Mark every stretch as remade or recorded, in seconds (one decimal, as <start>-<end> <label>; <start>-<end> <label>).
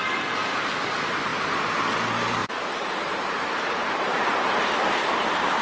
0.0-2.4 recorded; 2.4-4.0 remade; 4.0-5.6 recorded